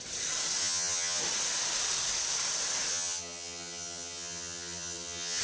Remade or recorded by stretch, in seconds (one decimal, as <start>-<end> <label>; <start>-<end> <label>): 0.0-0.6 recorded; 0.6-1.2 remade; 1.2-2.9 recorded; 2.9-5.4 remade